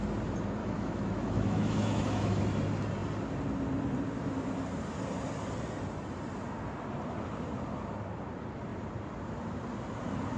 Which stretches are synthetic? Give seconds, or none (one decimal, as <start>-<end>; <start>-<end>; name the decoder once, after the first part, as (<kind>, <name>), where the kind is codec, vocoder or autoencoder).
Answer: 0.6-2.4 (autoencoder, DAC-VAE)